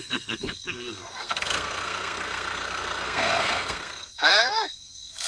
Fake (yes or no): yes